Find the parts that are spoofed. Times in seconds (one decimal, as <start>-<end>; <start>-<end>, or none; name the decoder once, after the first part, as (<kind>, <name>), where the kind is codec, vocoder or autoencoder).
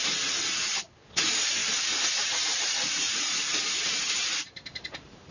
1.2-1.6 (vocoder, BigVGAN v2); 2.2-5.3